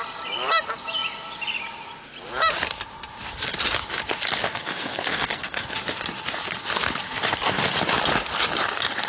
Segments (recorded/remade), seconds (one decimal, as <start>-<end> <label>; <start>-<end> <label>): 0.0-4.5 recorded; 4.5-5.7 remade; 5.7-9.1 recorded